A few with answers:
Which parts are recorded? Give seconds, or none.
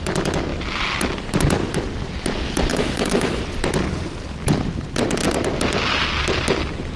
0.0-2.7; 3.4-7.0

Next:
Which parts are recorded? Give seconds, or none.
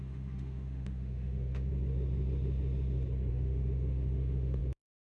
1.7-3.3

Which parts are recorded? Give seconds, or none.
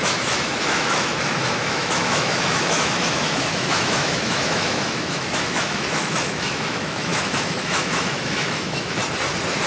9.0-9.7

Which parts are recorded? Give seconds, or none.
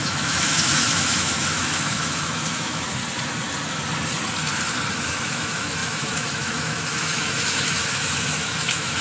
3.0-5.1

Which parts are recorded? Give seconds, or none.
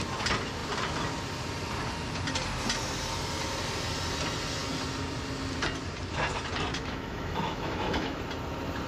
0.0-6.7; 8.2-8.9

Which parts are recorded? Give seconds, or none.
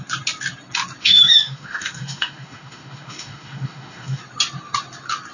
0.0-1.0; 4.2-5.3